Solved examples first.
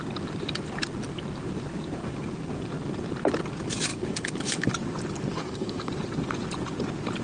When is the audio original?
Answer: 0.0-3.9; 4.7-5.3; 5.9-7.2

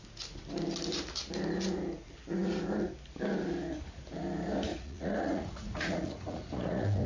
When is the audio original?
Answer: 0.0-4.7

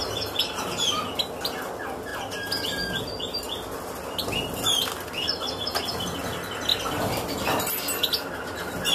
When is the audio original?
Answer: 0.0-6.7; 8.1-8.9